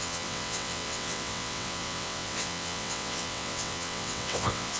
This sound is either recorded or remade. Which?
remade